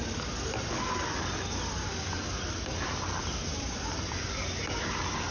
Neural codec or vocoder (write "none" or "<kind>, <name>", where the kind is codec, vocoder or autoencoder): none